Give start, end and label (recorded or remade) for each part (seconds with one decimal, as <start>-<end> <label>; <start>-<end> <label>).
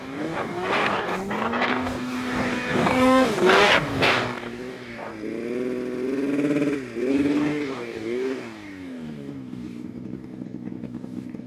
0.0-5.1 remade; 5.1-7.1 recorded; 7.1-11.5 remade